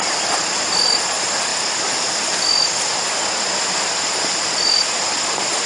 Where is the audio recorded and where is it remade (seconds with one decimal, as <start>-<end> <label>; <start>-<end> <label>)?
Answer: 0.0-5.7 recorded